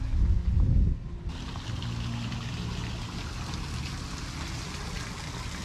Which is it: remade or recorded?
recorded